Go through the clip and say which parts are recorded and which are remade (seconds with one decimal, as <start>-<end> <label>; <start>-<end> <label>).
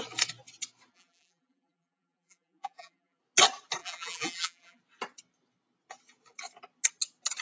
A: 0.0-0.9 recorded; 0.9-3.2 remade; 3.2-3.8 recorded; 3.8-4.8 remade; 4.8-7.4 recorded